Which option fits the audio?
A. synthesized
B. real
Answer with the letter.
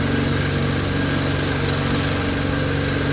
B